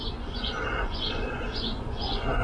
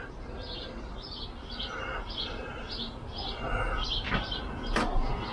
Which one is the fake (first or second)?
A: first